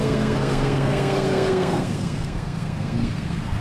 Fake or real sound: fake